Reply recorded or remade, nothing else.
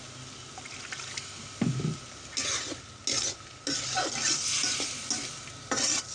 recorded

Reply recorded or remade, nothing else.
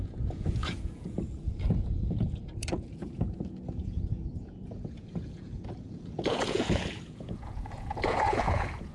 remade